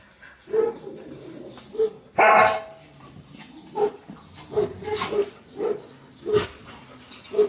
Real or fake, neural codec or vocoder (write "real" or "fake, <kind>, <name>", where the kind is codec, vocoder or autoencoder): real